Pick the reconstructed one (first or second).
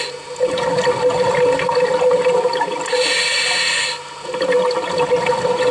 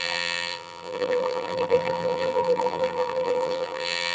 second